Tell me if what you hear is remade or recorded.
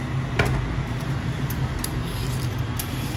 recorded